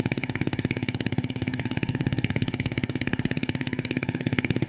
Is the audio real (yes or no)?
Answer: no